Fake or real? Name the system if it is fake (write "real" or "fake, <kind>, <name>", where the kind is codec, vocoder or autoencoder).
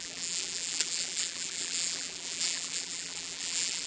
fake, vocoder, BigVGAN v2